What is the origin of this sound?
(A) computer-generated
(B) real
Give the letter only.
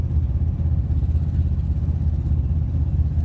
B